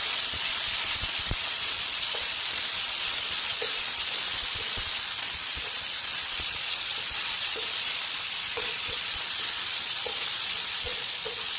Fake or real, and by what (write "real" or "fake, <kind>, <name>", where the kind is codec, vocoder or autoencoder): fake, vocoder, Vocos